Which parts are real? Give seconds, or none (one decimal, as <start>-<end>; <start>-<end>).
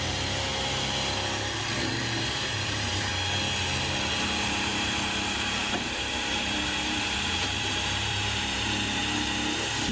0.5-1.8; 3.1-4.1; 9.0-9.9